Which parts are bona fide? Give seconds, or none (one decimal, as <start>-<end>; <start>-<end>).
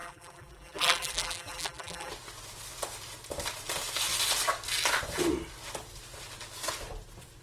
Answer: 2.1-7.4